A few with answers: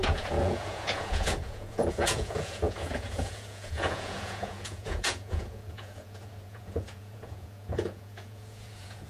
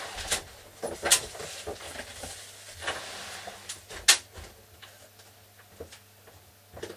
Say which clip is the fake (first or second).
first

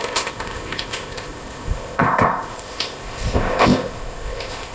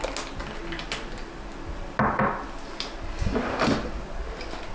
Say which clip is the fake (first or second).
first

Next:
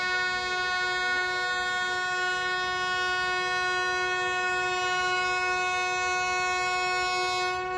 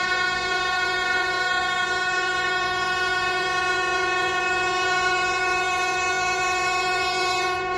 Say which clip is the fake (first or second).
second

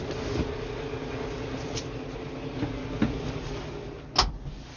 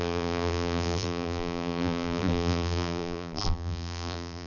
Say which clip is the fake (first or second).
second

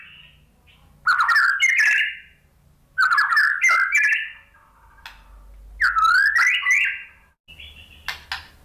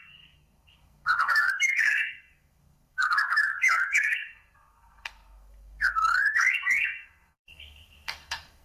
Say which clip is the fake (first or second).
second